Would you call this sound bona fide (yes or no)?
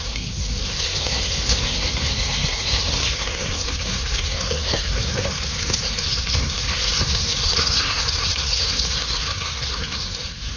no